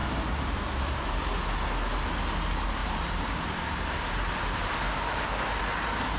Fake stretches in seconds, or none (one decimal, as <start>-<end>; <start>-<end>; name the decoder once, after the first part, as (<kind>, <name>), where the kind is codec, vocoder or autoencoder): 0.0-1.3 (vocoder, BigVGAN v2); 2.8-5.6